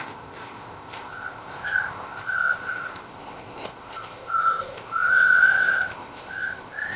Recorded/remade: remade